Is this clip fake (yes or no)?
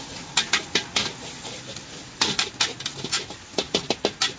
no